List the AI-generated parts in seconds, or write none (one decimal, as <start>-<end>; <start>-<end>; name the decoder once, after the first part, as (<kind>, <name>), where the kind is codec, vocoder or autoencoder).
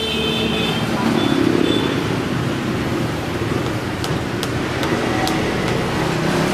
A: none